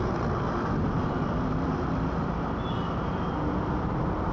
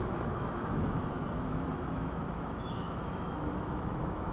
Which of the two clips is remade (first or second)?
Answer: second